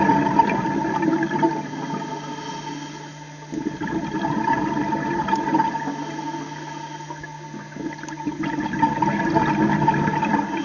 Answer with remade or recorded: recorded